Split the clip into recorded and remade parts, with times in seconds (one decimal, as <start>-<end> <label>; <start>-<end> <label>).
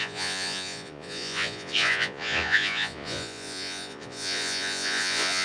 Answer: 0.0-5.4 remade